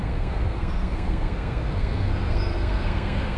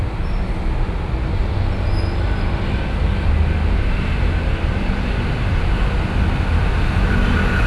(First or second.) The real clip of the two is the second